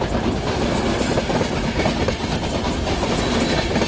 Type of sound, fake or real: real